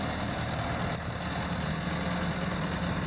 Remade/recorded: recorded